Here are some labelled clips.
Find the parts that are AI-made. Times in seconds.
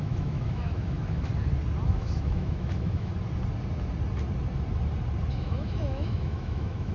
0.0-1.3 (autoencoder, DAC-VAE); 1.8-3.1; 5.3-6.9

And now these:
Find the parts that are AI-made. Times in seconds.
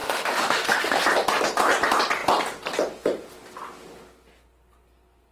0.0-1.0 (autoencoder, DAC-VAE)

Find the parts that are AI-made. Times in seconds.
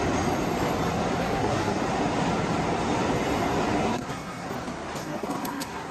1.2-1.8 (codec, SNAC); 3.8-4.5; 5.0-5.9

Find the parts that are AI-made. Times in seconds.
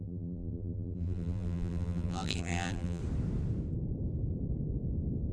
0.0-3.0 (vocoder, BigVGAN v2)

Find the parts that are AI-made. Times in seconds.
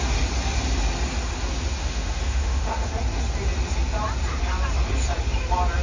1.8-2.9 (autoencoder, DAC-VAE)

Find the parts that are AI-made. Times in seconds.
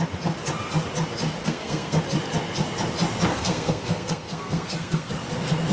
1.4-2.0 (codec, SNAC); 3.3-5.1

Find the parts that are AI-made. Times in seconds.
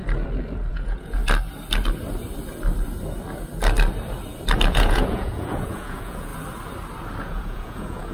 0.7-1.2 (vocoder, Vocos); 4.7-6.3; 7.2-8.1